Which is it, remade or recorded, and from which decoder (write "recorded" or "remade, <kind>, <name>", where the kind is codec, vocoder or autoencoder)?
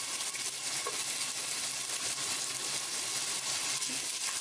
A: recorded